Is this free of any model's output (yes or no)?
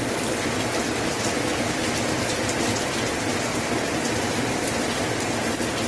yes